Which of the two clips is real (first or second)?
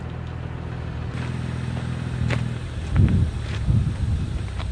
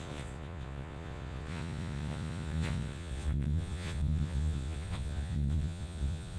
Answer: first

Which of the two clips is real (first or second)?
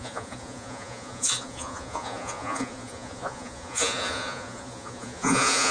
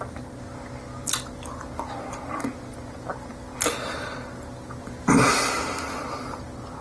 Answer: second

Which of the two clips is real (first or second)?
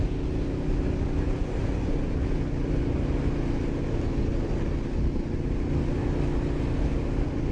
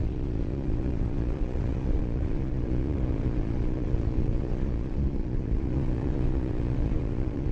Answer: first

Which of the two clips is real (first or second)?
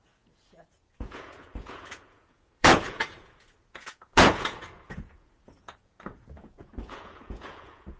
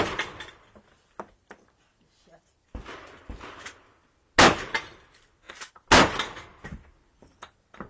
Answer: second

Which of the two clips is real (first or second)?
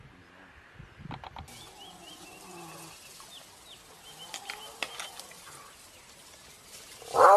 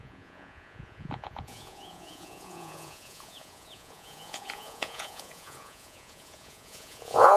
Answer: first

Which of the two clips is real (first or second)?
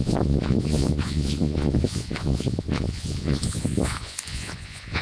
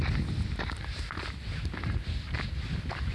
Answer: second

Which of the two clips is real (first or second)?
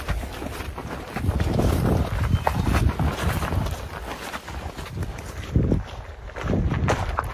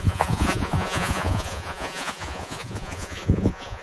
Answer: first